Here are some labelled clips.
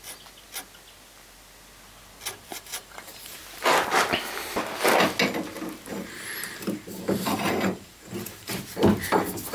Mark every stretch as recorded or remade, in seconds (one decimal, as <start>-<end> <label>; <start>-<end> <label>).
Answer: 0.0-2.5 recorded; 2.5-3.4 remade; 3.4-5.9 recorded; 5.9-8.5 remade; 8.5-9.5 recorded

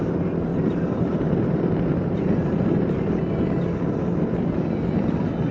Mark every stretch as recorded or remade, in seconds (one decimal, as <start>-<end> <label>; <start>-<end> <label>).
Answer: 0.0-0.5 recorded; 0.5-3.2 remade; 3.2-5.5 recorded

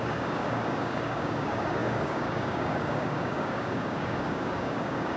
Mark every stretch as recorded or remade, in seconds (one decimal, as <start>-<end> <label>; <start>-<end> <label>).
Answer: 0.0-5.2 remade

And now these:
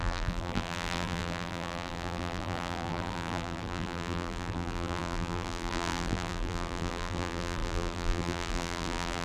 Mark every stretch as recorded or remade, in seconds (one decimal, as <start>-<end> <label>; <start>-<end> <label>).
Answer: 0.0-9.2 remade

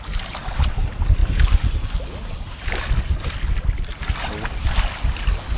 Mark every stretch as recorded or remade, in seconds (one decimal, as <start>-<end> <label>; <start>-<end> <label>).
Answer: 0.0-5.6 recorded